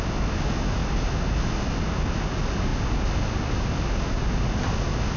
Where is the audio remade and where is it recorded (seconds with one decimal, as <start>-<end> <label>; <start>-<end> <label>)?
0.0-5.2 recorded